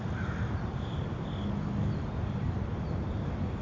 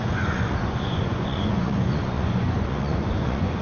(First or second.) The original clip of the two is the first